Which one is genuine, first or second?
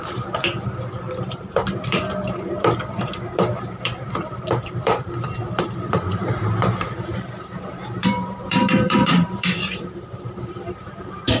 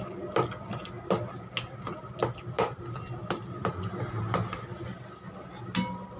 second